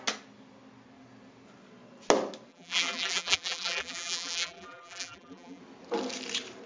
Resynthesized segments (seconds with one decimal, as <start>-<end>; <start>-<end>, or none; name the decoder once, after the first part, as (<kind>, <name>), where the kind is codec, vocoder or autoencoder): 2.5-5.6 (vocoder, BigVGAN v2)